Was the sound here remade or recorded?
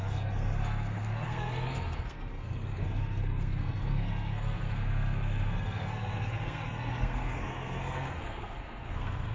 remade